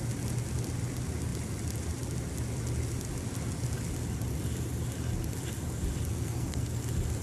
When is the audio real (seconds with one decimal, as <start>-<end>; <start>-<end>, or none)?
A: 0.0-6.1; 6.8-7.2